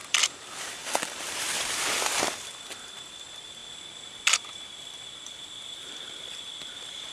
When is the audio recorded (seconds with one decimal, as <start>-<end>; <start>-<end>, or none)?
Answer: 3.6-4.3